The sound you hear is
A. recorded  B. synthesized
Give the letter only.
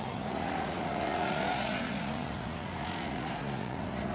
B